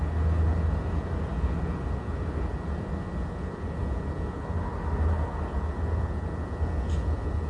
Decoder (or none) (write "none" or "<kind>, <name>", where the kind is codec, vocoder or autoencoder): none